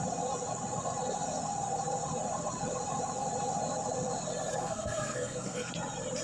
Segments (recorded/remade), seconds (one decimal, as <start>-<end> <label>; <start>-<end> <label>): 0.0-4.6 recorded; 4.6-5.7 remade; 5.7-6.2 recorded